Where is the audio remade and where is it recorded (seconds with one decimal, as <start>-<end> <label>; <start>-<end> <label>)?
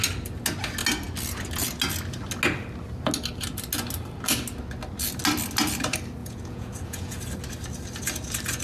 0.0-6.2 recorded; 6.2-7.2 remade; 7.2-8.6 recorded